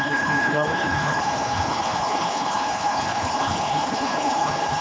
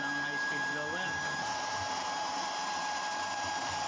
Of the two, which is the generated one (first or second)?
first